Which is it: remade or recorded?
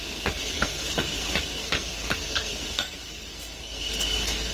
remade